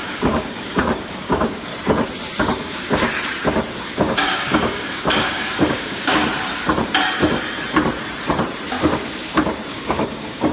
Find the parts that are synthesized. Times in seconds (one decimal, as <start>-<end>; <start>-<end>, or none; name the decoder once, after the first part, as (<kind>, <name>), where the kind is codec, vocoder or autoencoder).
0.0-1.7 (codec, DAC); 2.4-3.1; 3.7-6.3; 9.7-10.5